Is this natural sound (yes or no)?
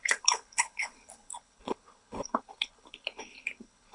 no